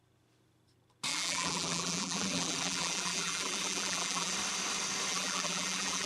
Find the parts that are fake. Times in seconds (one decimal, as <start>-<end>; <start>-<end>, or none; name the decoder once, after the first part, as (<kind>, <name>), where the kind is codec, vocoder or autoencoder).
1.1-4.3 (vocoder, BigVGAN v2); 5.1-6.1